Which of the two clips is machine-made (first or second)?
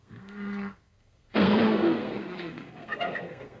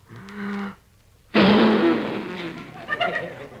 first